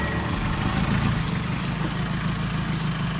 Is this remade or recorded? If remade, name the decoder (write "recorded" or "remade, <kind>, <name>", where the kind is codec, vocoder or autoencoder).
recorded